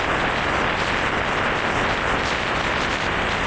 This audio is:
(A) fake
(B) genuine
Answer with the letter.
B